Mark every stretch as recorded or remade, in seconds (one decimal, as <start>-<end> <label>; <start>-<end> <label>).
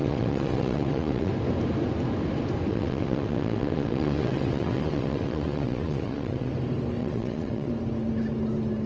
0.0-1.3 remade; 1.3-2.7 recorded; 2.7-6.5 remade; 6.5-7.0 recorded; 7.0-7.7 remade; 7.7-8.9 recorded